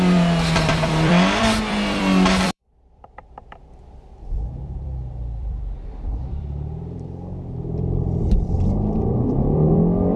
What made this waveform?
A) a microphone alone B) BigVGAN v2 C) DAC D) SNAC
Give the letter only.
B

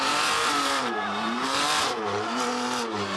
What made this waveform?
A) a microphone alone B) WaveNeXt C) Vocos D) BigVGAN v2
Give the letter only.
D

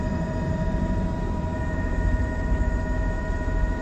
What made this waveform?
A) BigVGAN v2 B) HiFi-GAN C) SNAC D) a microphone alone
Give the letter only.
A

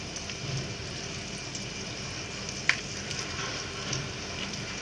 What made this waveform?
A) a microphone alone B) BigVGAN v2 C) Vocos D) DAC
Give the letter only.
B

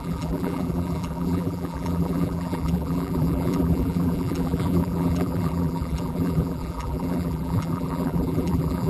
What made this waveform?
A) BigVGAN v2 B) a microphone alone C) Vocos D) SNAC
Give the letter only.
A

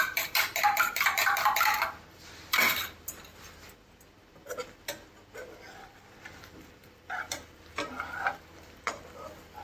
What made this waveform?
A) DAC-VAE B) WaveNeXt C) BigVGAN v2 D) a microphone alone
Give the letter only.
C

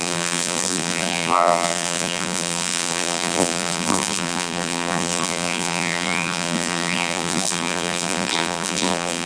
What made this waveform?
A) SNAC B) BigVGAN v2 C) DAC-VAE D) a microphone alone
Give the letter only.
B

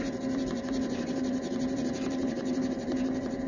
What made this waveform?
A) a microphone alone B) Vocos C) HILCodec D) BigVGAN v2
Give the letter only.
D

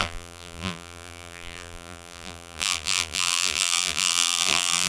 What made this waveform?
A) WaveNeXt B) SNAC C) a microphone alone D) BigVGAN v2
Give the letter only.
D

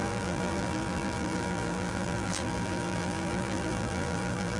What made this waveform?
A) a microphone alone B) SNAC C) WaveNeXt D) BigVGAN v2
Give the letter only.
D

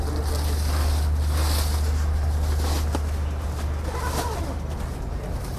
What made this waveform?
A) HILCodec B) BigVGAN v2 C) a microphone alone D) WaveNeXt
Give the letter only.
C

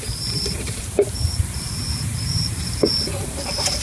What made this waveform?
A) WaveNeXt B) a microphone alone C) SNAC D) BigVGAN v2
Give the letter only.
D